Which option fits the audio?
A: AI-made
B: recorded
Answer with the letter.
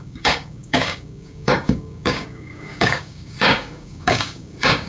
A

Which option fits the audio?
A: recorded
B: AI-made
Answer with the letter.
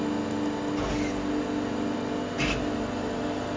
A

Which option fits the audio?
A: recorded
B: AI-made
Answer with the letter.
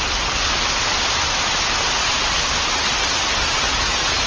A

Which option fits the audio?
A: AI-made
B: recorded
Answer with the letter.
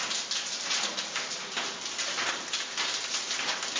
B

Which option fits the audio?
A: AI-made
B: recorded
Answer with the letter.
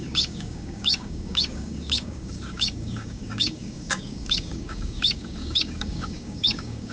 A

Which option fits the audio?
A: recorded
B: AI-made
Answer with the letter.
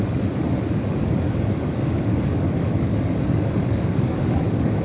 B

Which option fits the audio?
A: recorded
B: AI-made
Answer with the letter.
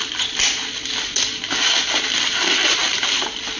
A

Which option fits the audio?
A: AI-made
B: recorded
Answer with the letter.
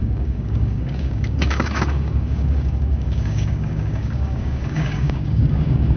A